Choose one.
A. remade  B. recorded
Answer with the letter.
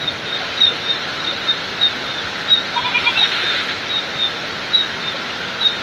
B